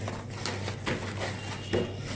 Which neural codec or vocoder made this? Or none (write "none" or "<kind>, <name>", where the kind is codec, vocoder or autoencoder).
none